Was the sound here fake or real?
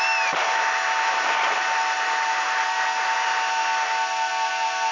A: real